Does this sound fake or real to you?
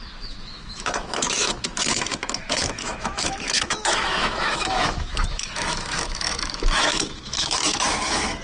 fake